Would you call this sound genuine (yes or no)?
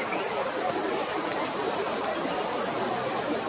no